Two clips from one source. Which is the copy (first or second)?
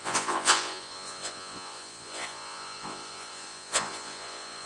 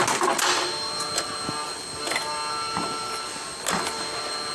first